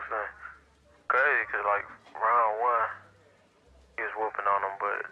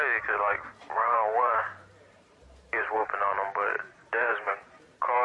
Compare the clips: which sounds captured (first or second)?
first